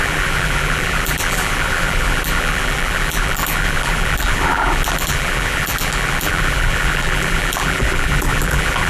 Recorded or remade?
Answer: remade